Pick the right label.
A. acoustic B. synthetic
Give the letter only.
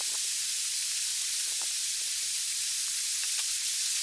A